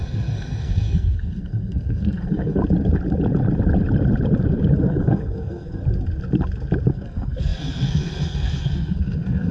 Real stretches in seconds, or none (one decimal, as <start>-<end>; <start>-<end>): 2.6-4.8; 5.8-6.9